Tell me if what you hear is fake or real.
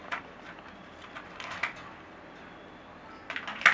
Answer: real